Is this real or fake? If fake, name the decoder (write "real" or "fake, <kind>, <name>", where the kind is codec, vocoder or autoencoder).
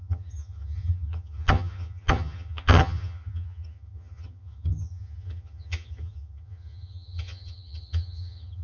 fake, vocoder, HiFi-GAN